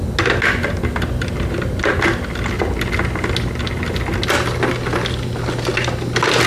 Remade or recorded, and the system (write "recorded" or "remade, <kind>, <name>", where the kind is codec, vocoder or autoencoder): recorded